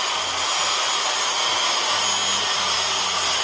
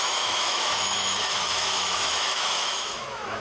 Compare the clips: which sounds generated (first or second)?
second